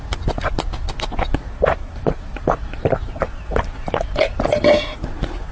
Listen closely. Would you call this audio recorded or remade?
recorded